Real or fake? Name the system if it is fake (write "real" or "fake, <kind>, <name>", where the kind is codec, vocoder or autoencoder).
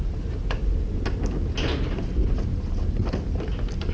real